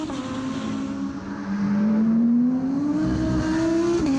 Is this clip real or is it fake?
real